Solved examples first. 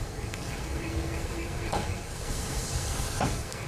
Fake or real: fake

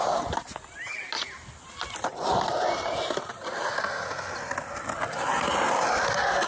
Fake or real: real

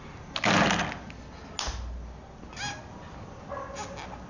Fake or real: real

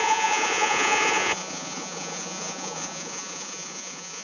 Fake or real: fake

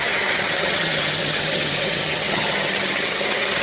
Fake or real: fake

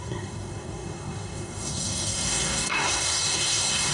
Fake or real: fake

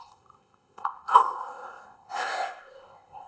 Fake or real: fake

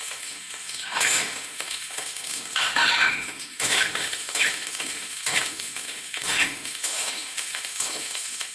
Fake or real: fake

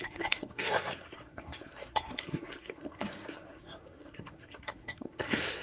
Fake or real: fake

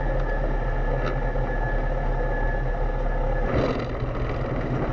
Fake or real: real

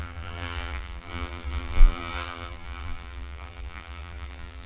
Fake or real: fake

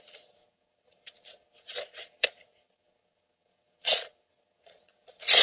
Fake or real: fake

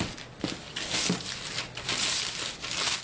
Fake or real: real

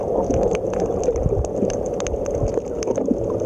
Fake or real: real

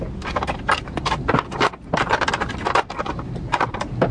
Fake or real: real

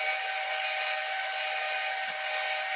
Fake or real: real